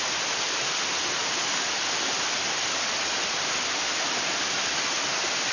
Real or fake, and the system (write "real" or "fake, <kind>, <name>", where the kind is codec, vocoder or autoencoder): real